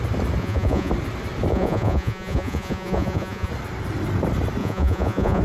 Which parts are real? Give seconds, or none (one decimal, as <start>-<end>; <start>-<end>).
0.0-0.4; 0.9-1.5; 3.5-4.6